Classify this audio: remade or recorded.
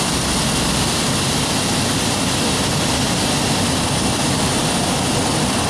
recorded